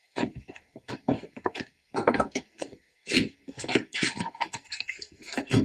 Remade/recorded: remade